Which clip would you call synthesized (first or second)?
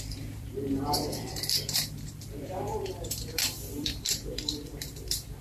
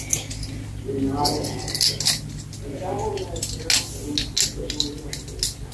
first